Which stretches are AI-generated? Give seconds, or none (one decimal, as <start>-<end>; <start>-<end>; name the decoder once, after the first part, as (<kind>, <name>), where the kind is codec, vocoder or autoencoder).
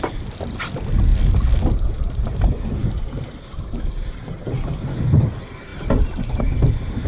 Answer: none